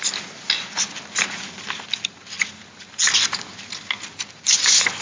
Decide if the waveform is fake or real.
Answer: real